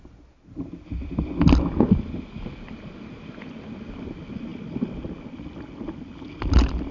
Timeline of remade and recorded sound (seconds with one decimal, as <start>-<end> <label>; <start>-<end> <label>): 0.0-6.9 recorded